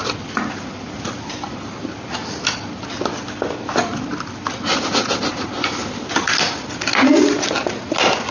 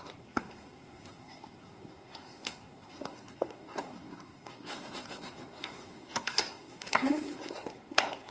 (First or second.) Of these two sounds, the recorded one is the first